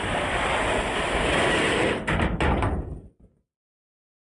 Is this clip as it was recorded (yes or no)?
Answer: yes